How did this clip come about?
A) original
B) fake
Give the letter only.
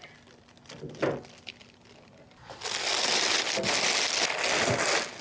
A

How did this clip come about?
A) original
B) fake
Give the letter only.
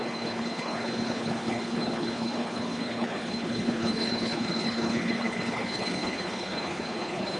B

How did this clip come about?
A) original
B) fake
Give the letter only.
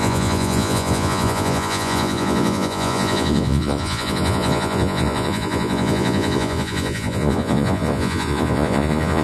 B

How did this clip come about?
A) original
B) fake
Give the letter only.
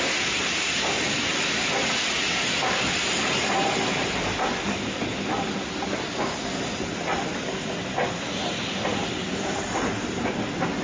A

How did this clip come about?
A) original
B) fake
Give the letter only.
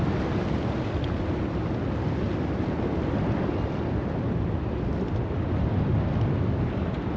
A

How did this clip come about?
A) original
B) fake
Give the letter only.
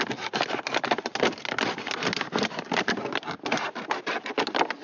A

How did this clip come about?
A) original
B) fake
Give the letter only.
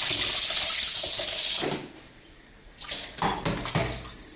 A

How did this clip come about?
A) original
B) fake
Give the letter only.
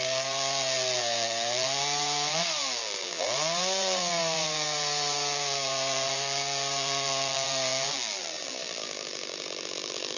B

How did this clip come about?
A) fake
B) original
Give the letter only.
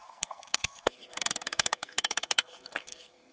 A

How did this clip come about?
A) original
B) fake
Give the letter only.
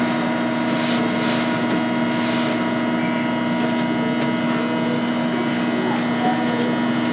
A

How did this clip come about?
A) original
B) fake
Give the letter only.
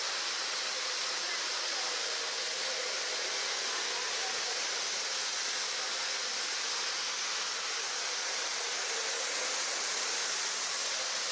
A